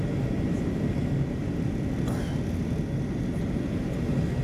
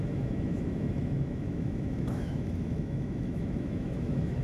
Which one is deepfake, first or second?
second